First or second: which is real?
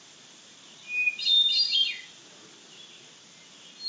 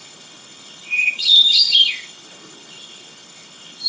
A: first